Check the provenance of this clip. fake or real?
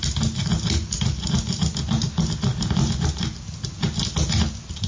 real